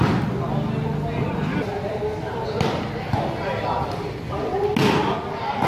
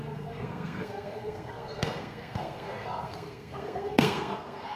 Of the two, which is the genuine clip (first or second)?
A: first